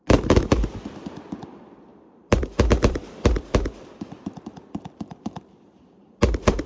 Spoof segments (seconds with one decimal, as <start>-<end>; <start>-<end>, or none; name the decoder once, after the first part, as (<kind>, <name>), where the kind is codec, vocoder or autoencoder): 1.9-5.9 (vocoder, BigVGAN v2)